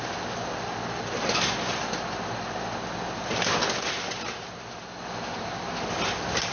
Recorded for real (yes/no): yes